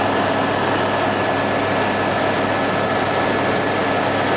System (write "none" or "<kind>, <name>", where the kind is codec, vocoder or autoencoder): none